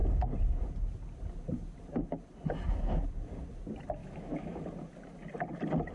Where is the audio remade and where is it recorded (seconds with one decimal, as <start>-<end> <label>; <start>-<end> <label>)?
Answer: 0.0-4.0 recorded; 4.0-4.6 remade; 4.6-5.9 recorded